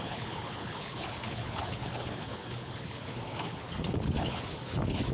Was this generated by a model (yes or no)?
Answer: yes